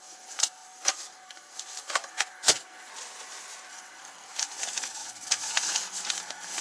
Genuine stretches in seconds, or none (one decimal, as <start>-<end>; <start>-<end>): 2.9-3.7